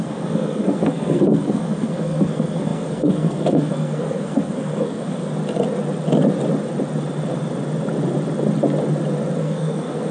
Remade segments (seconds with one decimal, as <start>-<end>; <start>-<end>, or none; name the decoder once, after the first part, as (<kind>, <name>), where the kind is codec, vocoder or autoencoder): 0.0-5.3 (codec, SNAC); 9.4-10.1